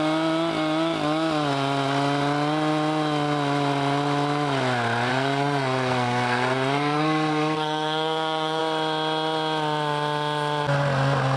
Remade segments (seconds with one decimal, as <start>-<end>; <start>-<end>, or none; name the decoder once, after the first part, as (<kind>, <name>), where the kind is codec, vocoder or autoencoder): 5.1-8.6 (codec, SNAC)